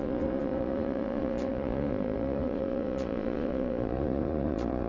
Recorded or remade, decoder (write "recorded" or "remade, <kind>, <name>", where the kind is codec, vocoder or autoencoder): remade, vocoder, Vocos